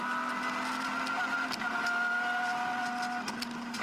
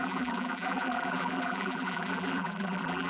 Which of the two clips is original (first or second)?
first